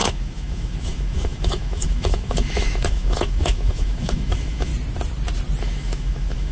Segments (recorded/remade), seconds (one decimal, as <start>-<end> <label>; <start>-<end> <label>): 0.0-4.7 remade; 4.7-5.6 recorded; 5.6-6.5 remade